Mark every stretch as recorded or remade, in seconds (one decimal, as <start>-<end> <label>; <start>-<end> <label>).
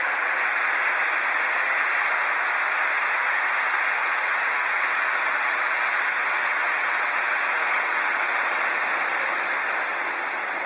0.0-0.7 remade; 0.7-4.0 recorded; 4.0-8.8 remade; 8.8-9.6 recorded; 9.6-10.7 remade